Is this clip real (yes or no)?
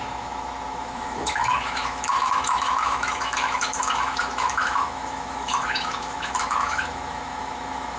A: no